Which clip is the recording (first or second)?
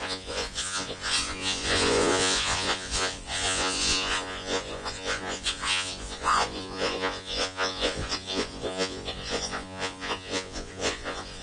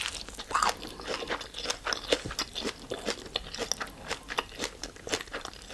second